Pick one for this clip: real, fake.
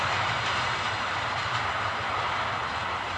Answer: fake